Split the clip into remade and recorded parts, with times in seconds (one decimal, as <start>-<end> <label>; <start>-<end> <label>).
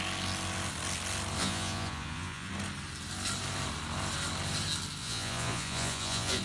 0.0-1.4 recorded; 1.4-2.5 remade; 2.5-5.0 recorded; 5.0-6.4 remade